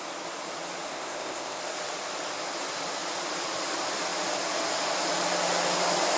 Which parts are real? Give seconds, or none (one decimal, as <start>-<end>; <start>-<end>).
0.0-0.9; 1.6-6.2